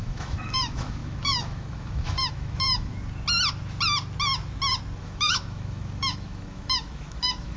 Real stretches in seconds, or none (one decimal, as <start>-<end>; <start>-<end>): 2.9-5.0